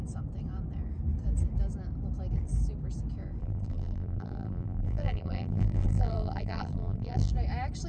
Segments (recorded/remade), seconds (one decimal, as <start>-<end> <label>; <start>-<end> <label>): 0.0-3.4 recorded; 3.4-7.3 remade; 7.3-7.9 recorded